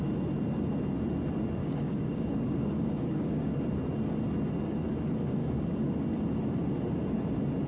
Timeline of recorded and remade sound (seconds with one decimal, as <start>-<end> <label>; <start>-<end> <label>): 0.0-1.6 recorded; 1.6-3.5 remade; 3.5-5.4 recorded; 5.4-5.9 remade; 5.9-7.7 recorded